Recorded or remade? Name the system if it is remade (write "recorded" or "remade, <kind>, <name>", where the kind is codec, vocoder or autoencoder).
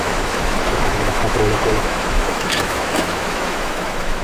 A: remade, autoencoder, DAC-VAE